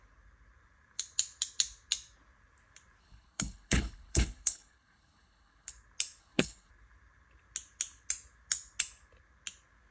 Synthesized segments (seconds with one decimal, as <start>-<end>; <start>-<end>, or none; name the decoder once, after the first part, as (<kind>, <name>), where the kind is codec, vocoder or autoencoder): 3.0-5.7 (codec, HILCodec); 6.2-6.7